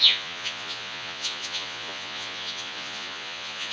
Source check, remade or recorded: remade